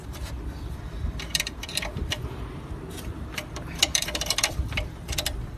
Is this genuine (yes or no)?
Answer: no